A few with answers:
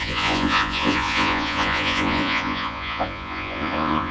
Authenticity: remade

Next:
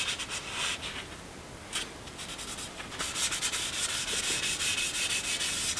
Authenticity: recorded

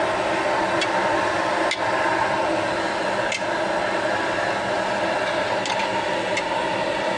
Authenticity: recorded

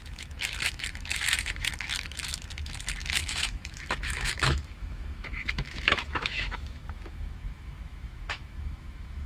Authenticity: remade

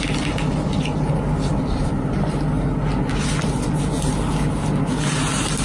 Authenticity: recorded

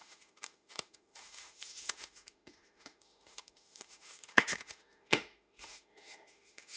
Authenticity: remade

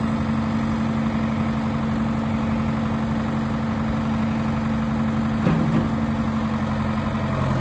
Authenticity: recorded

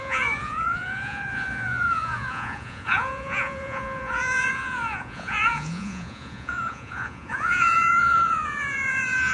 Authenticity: remade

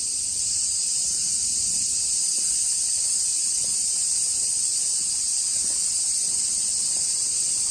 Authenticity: recorded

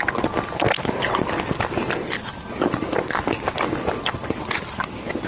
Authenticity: recorded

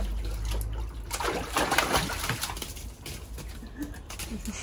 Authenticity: recorded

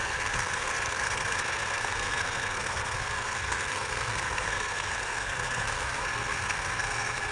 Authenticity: remade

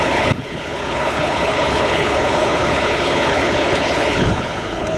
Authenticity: remade